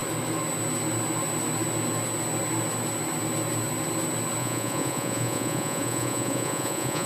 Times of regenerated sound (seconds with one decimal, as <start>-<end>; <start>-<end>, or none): 4.4-7.1